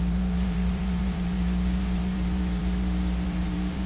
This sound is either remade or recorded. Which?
remade